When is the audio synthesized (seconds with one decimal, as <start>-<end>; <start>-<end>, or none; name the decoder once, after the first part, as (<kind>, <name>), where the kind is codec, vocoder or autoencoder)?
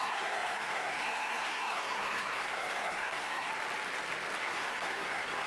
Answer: 0.0-3.5 (codec, SNAC); 4.4-5.5